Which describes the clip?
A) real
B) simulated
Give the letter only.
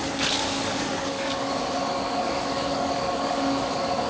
B